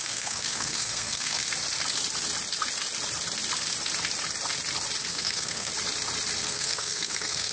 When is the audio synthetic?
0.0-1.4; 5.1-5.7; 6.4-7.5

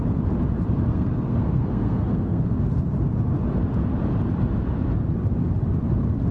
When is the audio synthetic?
0.9-2.6

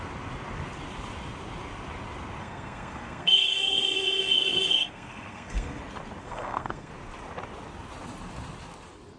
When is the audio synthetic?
2.4-5.8; 6.2-6.9

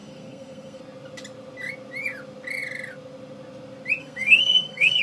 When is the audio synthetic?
0.0-0.8; 4.0-5.0

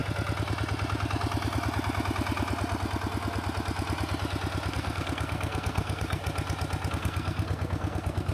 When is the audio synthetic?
4.7-6.2; 6.9-8.3

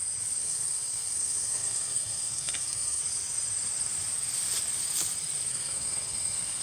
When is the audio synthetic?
0.4-3.0; 5.5-6.6

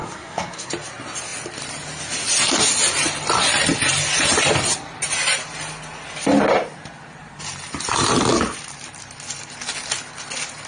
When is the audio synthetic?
0.0-0.7

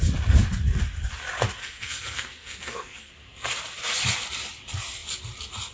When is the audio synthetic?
1.6-3.1